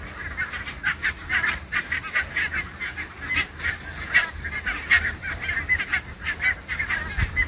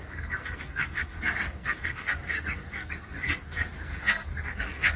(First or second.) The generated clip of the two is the second